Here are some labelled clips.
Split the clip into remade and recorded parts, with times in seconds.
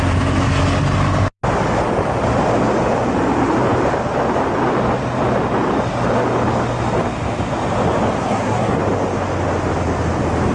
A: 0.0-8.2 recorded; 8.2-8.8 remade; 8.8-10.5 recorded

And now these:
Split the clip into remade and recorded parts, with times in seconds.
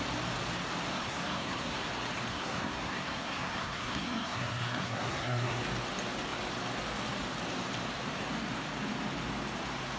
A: 0.0-0.9 recorded; 0.9-1.9 remade; 1.9-2.3 recorded; 2.3-5.6 remade; 5.6-10.0 recorded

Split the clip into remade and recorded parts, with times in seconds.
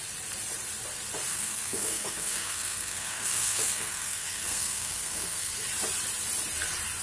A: 0.0-1.3 recorded; 1.3-5.5 remade; 5.5-7.0 recorded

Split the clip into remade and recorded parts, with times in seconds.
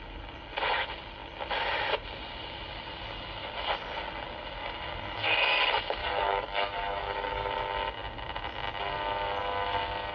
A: 0.0-6.0 recorded; 6.0-7.5 remade; 7.5-10.1 recorded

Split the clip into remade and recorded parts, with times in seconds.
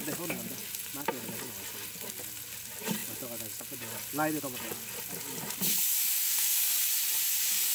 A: 0.0-6.0 recorded; 6.0-6.6 remade; 6.6-7.7 recorded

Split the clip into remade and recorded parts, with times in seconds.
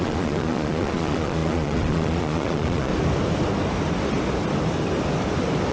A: 0.0-2.9 remade; 2.9-5.7 recorded